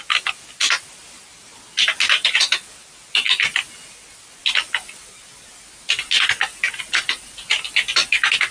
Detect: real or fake real